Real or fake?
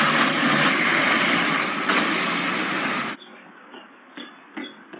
real